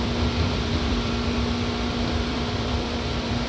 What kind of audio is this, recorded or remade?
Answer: remade